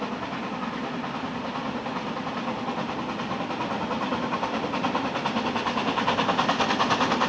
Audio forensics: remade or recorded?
remade